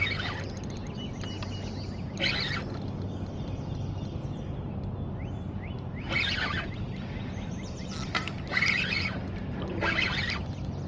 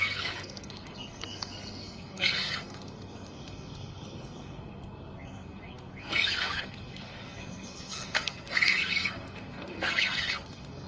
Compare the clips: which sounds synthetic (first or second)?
second